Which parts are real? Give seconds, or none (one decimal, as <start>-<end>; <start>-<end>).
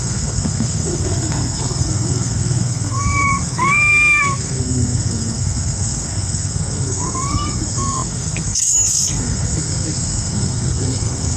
none